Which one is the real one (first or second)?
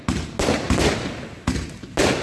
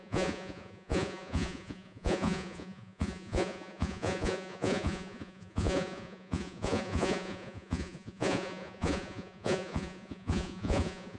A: first